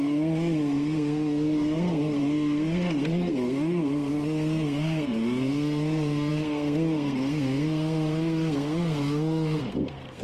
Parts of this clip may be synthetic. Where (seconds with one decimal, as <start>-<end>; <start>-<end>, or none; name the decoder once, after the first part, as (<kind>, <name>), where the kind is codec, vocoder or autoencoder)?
0.0-10.2 (codec, SNAC)